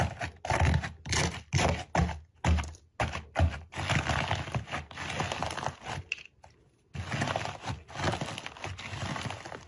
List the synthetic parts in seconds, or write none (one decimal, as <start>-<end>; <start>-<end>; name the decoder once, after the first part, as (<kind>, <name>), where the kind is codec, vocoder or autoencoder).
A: none